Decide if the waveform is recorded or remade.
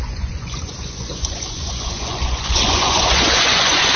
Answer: remade